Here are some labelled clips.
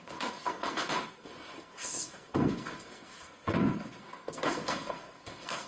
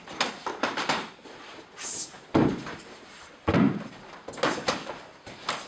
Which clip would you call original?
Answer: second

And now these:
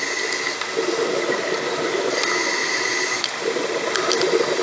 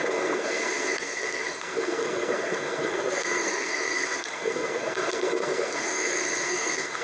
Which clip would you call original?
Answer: first